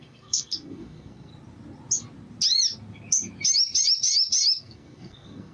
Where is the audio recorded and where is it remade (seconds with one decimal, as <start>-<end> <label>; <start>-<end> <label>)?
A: 0.0-1.3 remade; 1.3-4.6 recorded; 4.6-5.5 remade